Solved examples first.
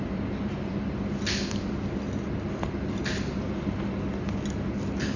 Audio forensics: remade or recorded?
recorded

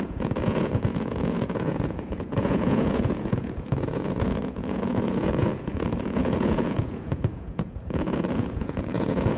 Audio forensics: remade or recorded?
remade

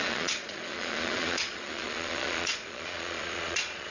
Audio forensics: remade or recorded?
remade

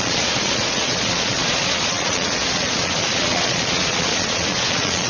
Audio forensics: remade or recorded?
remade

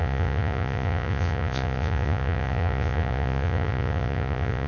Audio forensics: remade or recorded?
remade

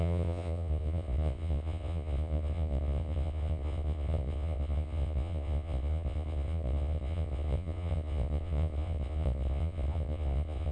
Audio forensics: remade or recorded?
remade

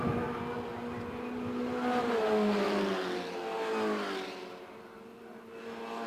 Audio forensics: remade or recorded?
recorded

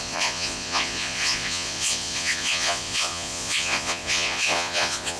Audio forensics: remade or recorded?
remade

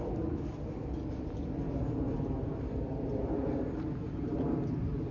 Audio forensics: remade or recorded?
recorded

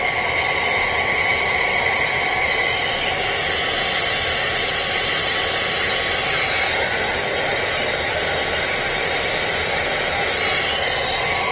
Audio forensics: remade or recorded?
recorded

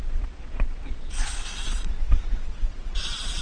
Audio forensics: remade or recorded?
remade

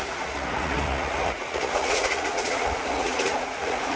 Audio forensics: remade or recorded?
remade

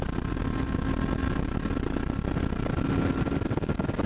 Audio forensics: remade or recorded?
recorded